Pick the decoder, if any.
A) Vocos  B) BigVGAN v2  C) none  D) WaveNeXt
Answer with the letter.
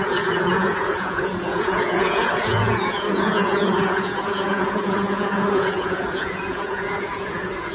A